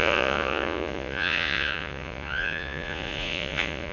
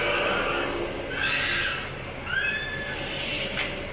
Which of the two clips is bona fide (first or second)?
second